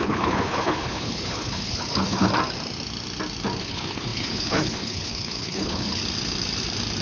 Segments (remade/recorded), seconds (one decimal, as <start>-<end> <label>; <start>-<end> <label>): 0.0-2.3 remade; 2.3-3.6 recorded; 3.6-6.0 remade; 6.0-7.0 recorded